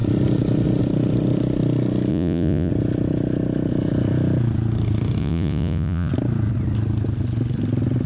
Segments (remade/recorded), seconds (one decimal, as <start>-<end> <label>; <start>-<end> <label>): 0.0-2.1 recorded; 2.1-2.7 remade; 2.7-5.2 recorded; 5.2-6.1 remade; 6.1-8.1 recorded